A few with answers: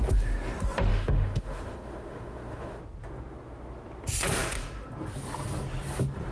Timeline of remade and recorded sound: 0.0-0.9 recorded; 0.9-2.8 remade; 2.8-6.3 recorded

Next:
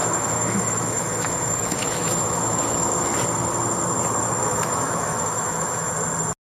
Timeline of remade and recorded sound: 0.0-2.9 remade; 2.9-4.4 recorded; 4.4-5.9 remade; 5.9-6.4 recorded